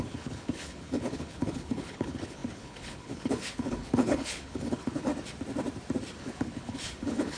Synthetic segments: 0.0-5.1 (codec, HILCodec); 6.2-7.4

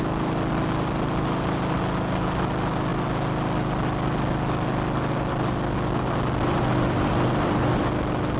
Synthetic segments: none

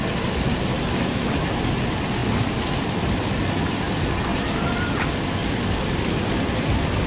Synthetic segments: 0.0-1.7 (vocoder, BigVGAN v2); 2.2-3.3; 4.3-4.9; 5.4-7.1

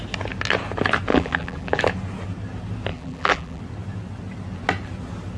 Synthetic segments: 1.1-1.8 (vocoder, BigVGAN v2); 2.9-3.6